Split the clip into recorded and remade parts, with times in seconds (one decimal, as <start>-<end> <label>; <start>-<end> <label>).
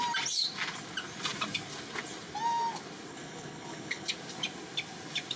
0.0-3.1 recorded; 3.1-4.1 remade; 4.1-5.4 recorded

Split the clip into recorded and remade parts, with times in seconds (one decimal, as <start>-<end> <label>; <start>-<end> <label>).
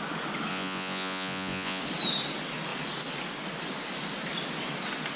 0.0-0.5 recorded; 0.5-1.8 remade; 1.8-5.2 recorded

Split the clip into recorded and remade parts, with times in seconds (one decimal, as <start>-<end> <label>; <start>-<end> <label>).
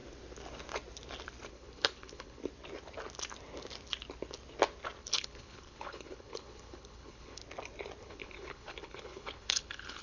0.0-1.5 recorded; 1.5-2.4 remade; 2.4-5.0 recorded; 5.0-7.4 remade; 7.4-8.0 recorded; 8.0-10.0 remade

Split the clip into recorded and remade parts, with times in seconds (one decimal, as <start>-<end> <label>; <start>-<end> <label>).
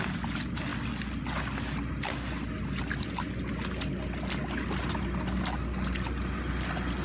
0.0-7.0 recorded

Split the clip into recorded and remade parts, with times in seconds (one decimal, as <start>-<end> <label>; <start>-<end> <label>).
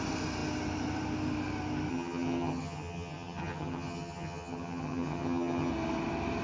0.0-1.9 recorded; 1.9-5.7 remade; 5.7-6.4 recorded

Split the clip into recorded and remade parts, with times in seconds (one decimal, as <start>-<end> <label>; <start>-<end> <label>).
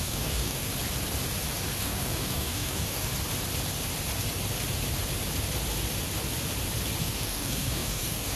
0.0-0.7 remade; 0.7-1.8 recorded; 1.8-3.1 remade; 3.1-7.0 recorded; 7.0-8.4 remade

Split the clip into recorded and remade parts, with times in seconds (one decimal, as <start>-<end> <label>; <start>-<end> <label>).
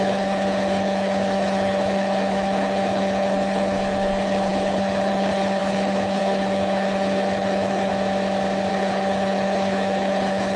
0.0-7.9 remade; 7.9-8.7 recorded; 8.7-10.6 remade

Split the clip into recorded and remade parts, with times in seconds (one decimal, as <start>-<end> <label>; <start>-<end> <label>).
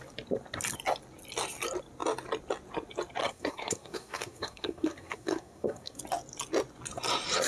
0.0-3.2 recorded; 3.2-6.0 remade; 6.0-7.5 recorded